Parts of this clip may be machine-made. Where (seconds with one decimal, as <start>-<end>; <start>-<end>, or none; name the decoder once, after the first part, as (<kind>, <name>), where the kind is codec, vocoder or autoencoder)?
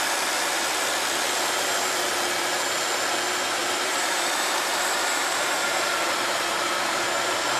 3.6-7.6 (vocoder, BigVGAN v2)